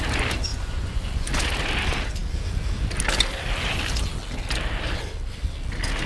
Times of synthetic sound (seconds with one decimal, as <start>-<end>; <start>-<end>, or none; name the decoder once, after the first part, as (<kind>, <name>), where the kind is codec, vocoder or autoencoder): 0.5-1.3 (vocoder, Vocos)